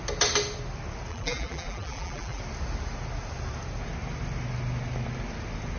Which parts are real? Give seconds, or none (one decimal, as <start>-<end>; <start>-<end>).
0.0-1.1; 2.4-5.8